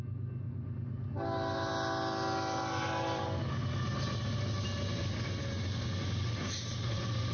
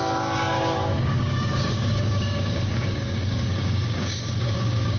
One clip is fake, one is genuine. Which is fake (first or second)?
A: second